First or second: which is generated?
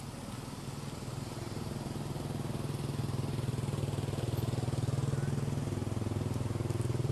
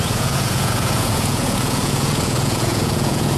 second